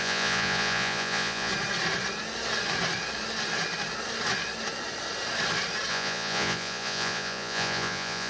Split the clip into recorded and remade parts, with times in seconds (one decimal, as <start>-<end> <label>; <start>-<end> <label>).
0.0-1.5 remade; 1.5-5.9 recorded; 5.9-8.3 remade